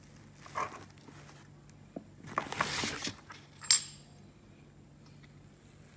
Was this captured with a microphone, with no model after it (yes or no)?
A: yes